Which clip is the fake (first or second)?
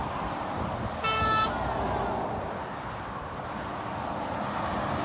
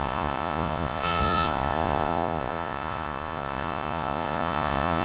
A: second